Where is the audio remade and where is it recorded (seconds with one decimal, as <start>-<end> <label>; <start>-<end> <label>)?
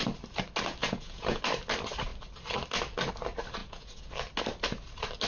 0.0-0.8 recorded; 0.8-1.4 remade; 1.4-3.6 recorded; 3.6-4.1 remade; 4.1-5.3 recorded